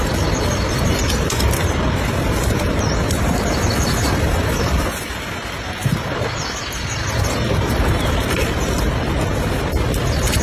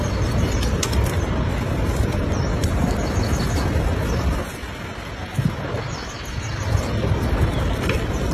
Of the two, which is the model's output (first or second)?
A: first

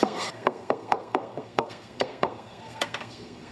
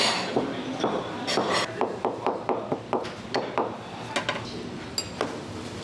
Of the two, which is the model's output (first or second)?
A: first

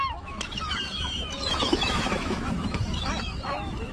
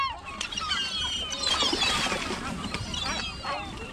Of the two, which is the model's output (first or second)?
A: first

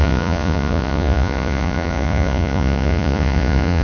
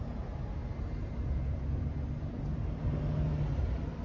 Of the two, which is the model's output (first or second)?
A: first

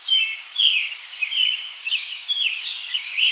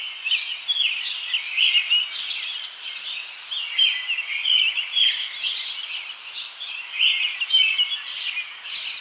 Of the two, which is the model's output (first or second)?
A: first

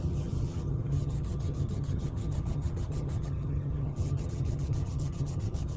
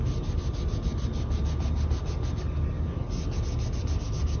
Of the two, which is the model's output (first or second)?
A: first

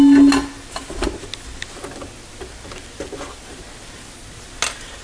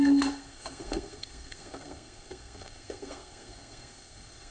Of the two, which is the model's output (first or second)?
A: second